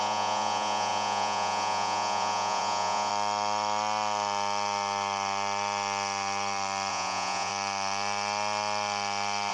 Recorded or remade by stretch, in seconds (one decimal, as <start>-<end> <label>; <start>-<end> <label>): 0.0-3.1 remade; 3.1-6.9 recorded; 6.9-7.5 remade; 7.5-9.5 recorded